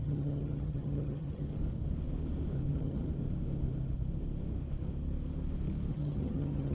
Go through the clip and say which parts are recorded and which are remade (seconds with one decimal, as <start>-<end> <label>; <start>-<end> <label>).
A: 0.0-1.6 remade; 1.6-2.7 recorded; 2.7-3.1 remade; 3.1-5.9 recorded; 5.9-6.7 remade